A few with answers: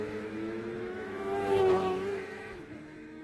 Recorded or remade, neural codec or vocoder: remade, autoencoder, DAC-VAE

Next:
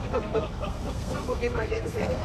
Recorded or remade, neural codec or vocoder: remade, codec, SNAC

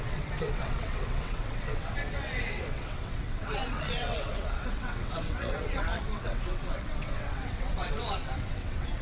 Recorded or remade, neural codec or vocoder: remade, vocoder, WaveNeXt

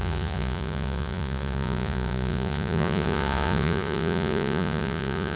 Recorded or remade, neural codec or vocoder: remade, vocoder, Vocos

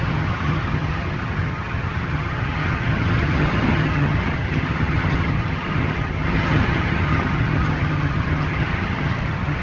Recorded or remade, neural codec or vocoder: remade, vocoder, HiFi-GAN